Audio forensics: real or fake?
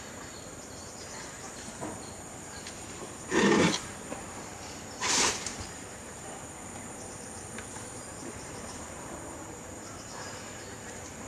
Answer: fake